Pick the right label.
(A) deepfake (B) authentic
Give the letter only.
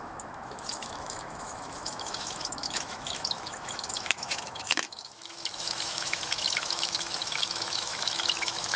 A